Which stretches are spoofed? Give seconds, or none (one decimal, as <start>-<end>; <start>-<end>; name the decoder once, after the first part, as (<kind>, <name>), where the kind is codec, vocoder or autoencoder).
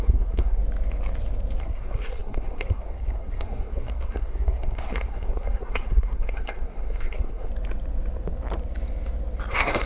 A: 0.0-0.6 (codec, SNAC); 1.6-7.5; 9.5-9.9